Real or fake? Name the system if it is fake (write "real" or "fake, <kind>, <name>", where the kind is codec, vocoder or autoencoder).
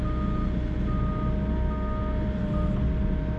real